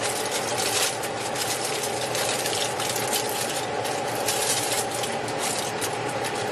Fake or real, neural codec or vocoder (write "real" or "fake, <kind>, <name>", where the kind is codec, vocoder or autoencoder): real